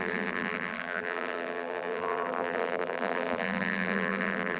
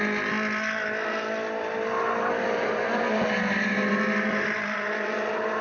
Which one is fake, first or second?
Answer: first